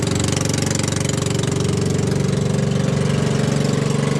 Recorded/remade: recorded